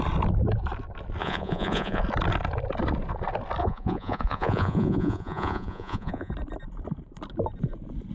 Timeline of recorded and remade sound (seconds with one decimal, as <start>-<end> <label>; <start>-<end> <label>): 0.0-1.2 recorded; 1.2-2.0 remade; 2.0-3.6 recorded; 3.6-6.3 remade; 6.3-8.1 recorded